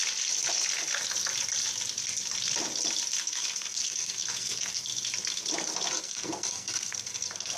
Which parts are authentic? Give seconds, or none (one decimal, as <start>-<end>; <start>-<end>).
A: 0.0-3.2; 4.9-6.0